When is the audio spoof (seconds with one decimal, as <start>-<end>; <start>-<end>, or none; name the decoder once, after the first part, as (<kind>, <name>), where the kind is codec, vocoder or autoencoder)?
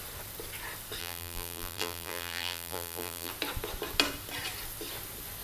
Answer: 1.0-3.3 (vocoder, BigVGAN v2)